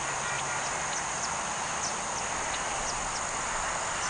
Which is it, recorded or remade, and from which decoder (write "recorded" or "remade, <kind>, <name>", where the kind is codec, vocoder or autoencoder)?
recorded